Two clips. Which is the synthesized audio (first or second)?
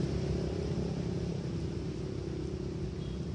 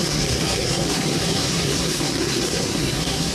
second